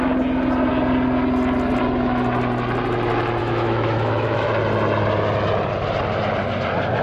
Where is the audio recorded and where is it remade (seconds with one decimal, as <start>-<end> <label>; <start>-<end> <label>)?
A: 0.0-3.4 recorded; 3.4-4.5 remade; 4.5-7.0 recorded